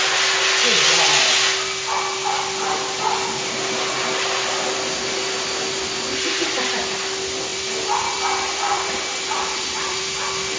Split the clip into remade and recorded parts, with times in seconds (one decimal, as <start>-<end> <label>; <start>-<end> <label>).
0.0-7.5 recorded; 7.5-10.0 remade; 10.0-10.6 recorded